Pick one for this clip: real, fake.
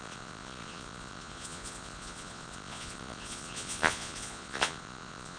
fake